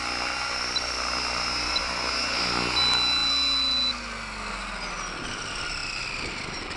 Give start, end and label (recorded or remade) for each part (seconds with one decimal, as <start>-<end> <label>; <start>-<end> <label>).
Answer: 0.0-6.8 recorded